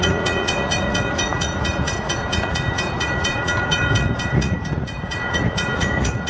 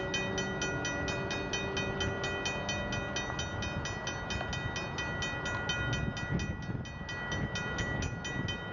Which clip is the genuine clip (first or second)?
second